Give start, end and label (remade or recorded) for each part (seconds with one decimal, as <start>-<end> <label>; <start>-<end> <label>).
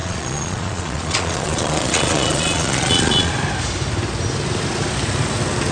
0.0-3.3 remade; 3.3-5.7 recorded